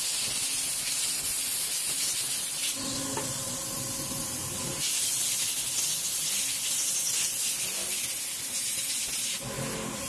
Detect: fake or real real